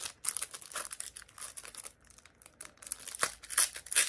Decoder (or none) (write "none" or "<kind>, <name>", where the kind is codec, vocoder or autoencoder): none